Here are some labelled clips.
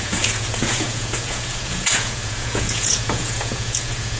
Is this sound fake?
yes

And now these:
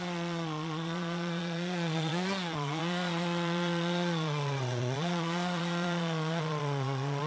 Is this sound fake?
yes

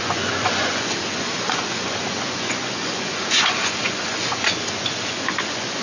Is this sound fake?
yes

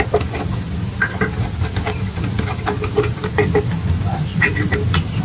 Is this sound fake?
no